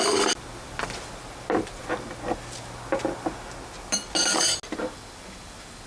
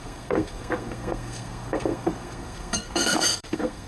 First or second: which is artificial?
second